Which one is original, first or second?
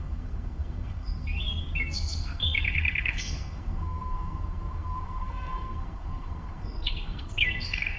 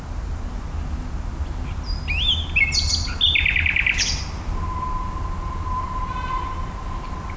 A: second